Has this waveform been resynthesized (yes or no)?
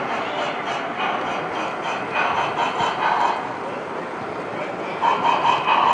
no